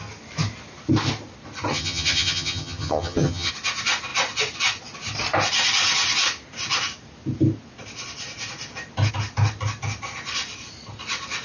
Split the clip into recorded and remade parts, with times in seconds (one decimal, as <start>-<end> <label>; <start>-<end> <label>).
0.0-1.7 recorded; 1.7-3.5 remade; 3.5-11.4 recorded